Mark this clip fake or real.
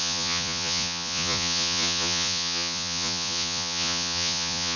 fake